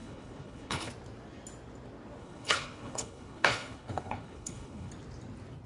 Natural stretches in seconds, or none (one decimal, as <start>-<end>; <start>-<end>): 0.9-2.2; 4.9-5.7